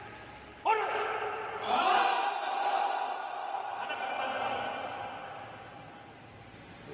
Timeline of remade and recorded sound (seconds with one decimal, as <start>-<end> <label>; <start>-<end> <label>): 0.0-6.9 remade